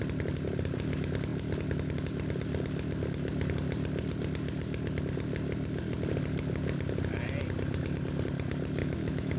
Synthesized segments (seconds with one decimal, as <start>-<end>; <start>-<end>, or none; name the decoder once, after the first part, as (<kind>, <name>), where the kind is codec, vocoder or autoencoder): 8.8-9.4 (autoencoder, DAC-VAE)